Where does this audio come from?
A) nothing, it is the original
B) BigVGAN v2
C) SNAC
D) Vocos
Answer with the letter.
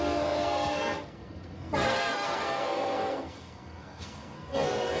C